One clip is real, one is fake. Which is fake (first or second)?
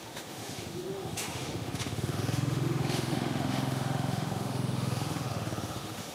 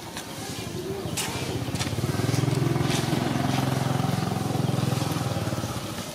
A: first